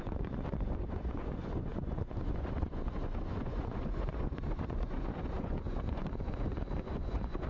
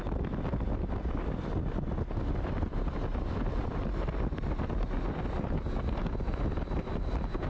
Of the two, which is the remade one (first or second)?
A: first